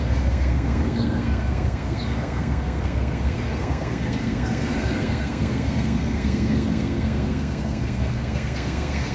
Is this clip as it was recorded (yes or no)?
no